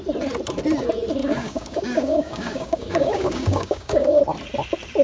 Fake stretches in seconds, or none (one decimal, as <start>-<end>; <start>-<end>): 1.2-4.2

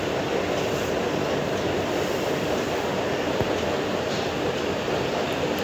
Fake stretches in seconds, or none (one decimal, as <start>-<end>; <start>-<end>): none

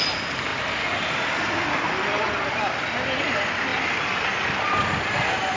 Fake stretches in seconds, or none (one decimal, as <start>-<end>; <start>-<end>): none

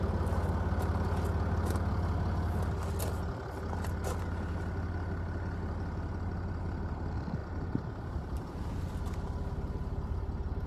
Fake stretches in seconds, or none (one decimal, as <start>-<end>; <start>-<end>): none

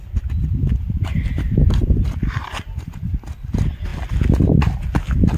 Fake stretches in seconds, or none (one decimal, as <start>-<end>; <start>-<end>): 0.4-3.1

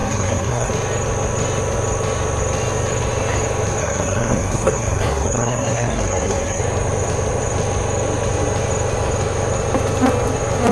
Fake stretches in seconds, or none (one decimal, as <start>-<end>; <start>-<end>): 0.0-0.7; 3.8-6.6